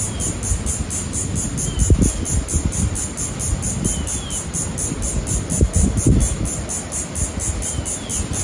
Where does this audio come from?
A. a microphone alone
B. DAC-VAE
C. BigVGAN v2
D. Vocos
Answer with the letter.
A